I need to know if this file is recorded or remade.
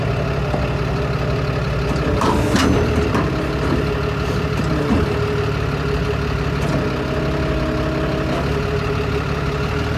recorded